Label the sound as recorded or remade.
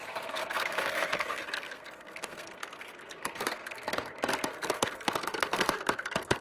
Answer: remade